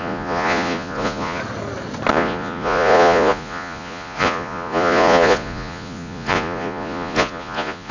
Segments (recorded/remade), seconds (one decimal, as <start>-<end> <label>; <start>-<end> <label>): 0.0-1.4 remade; 1.4-2.1 recorded; 2.1-7.9 remade